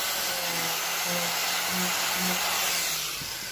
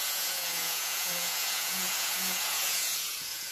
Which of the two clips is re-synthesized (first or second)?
second